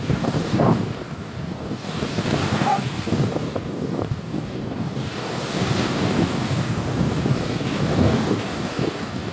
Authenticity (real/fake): fake